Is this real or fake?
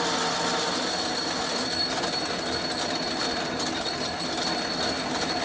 real